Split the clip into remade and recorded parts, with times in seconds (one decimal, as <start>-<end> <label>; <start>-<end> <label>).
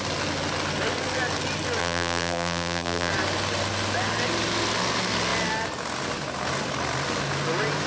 0.0-1.8 recorded; 1.8-3.1 remade; 3.1-7.9 recorded